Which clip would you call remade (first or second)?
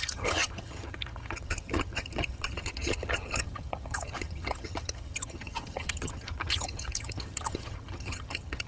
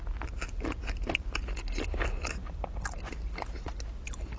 first